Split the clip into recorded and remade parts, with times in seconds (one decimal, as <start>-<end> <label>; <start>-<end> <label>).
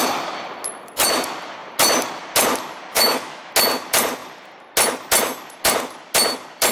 0.0-2.9 recorded; 2.9-3.5 remade; 3.5-6.7 recorded